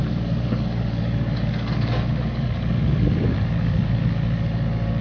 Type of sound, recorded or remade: remade